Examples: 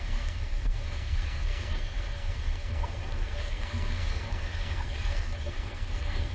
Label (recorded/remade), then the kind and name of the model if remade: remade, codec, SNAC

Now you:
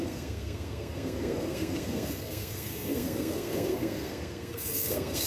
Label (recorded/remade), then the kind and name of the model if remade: remade, codec, SNAC